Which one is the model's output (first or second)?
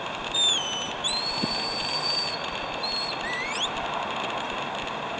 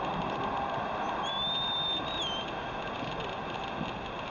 first